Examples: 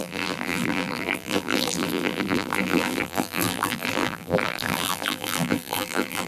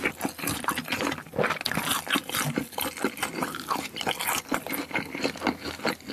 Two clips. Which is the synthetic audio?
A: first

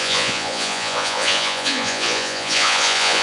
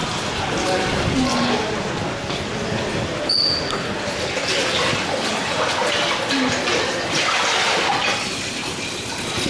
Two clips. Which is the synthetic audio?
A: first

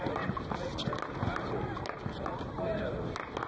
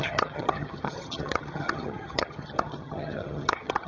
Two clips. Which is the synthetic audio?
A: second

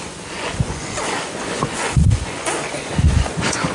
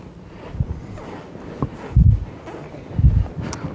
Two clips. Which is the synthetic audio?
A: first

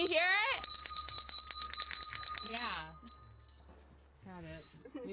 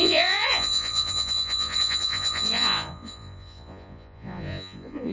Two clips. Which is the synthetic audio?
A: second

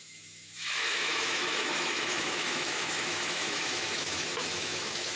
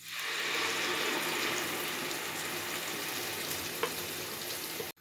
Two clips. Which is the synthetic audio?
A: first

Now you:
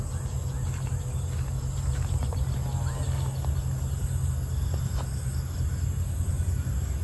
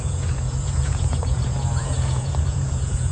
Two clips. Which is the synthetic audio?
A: second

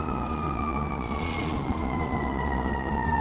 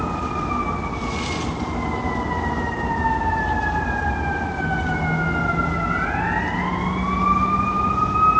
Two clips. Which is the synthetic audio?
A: first